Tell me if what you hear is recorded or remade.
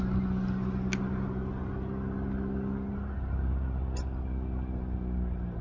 recorded